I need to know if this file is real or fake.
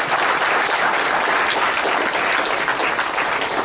real